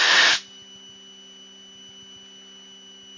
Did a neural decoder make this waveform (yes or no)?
no